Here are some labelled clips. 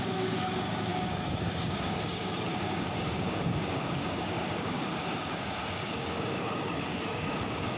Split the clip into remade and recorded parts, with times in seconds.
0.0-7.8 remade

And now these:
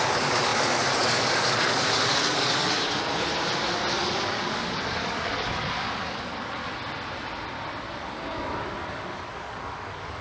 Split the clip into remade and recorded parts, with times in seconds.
0.0-3.3 remade; 3.3-3.9 recorded; 3.9-6.6 remade; 6.6-7.9 recorded; 7.9-10.2 remade

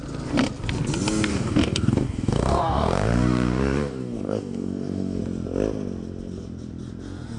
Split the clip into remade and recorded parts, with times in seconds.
0.0-1.3 recorded; 1.3-5.2 remade; 5.2-7.4 recorded

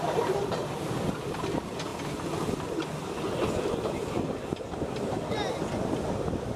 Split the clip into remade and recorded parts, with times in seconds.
0.0-6.6 recorded

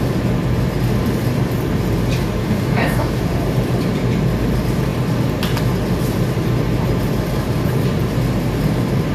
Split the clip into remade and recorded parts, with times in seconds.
0.0-2.4 recorded; 2.4-3.2 remade; 3.2-9.1 recorded